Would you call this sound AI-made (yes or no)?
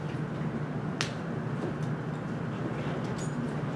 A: no